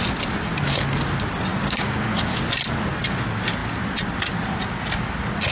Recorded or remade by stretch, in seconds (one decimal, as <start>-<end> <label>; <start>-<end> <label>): 0.0-1.5 recorded; 1.5-2.4 remade; 2.4-5.5 recorded